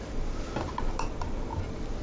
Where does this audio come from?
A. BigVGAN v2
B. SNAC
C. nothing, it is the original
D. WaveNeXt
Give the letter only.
C